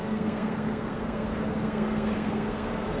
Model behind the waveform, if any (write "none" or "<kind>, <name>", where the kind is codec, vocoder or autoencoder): codec, SNAC